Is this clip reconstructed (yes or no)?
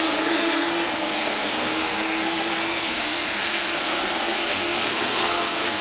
yes